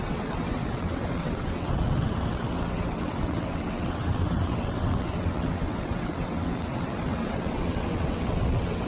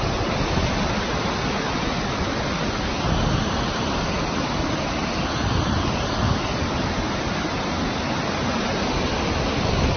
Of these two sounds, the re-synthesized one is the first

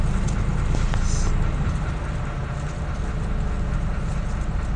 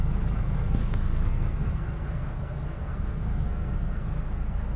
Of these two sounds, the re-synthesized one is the second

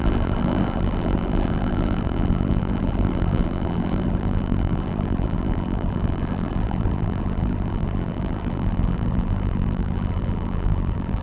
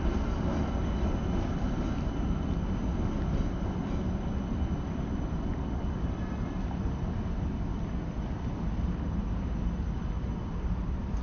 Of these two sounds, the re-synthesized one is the first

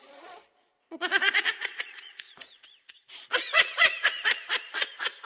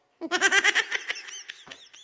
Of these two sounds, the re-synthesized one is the first